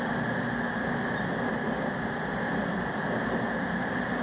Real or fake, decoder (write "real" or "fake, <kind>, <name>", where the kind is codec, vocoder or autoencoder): real